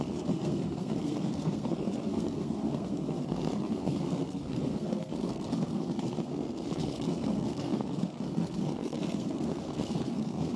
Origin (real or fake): fake